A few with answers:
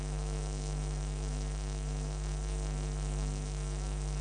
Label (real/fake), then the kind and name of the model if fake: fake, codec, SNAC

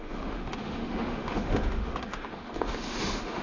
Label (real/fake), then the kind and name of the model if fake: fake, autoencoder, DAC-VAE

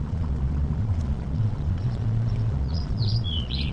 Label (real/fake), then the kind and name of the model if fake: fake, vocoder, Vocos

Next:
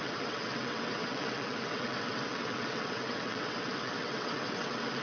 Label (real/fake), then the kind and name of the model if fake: fake, vocoder, WaveNeXt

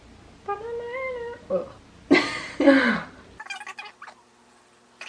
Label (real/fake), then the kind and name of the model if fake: real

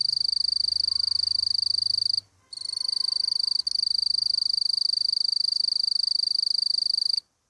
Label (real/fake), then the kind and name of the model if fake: real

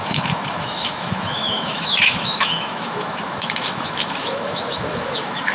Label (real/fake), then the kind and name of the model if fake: fake, autoencoder, DAC-VAE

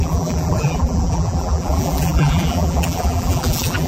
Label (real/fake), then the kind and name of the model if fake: fake, vocoder, BigVGAN v2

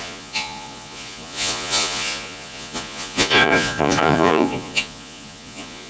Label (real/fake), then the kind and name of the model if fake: fake, vocoder, Vocos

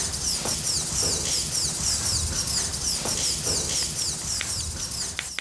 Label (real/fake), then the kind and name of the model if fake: real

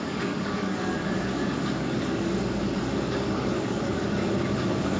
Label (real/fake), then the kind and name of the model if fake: fake, codec, DAC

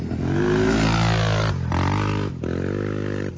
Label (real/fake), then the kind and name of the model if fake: real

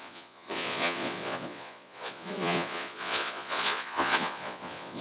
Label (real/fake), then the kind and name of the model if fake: fake, vocoder, Vocos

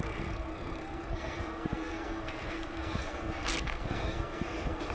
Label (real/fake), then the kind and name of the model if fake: fake, codec, SNAC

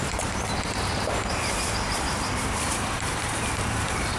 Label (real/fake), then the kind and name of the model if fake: fake, vocoder, BigVGAN v2